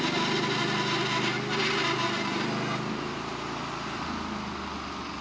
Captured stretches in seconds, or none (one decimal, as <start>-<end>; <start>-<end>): 0.0-5.2